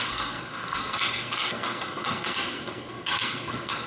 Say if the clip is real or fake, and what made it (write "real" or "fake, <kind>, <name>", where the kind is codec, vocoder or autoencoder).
fake, codec, SNAC